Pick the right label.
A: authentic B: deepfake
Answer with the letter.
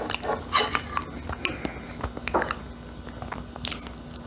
A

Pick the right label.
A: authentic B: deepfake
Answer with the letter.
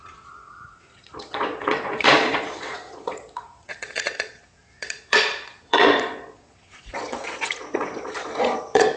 B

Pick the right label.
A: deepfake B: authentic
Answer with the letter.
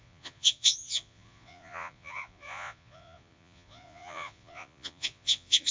A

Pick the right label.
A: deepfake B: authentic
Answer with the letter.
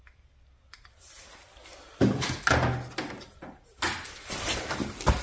B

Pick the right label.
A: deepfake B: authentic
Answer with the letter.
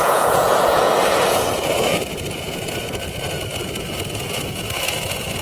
A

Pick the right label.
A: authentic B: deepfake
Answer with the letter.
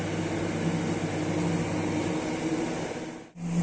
A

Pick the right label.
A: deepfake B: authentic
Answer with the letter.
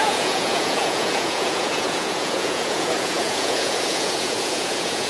A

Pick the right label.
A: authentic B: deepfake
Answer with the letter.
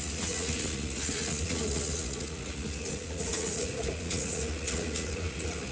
B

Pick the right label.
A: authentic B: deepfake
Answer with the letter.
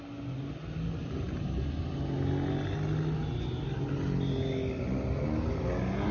A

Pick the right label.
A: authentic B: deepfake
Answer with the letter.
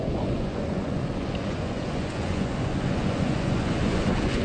B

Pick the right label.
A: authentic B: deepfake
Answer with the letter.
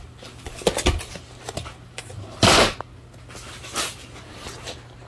A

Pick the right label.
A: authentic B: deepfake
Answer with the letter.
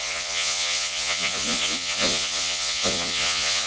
B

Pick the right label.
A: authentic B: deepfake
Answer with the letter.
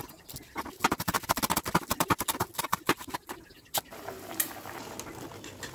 A